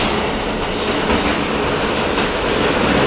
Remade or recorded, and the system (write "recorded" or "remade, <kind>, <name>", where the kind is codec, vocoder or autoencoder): recorded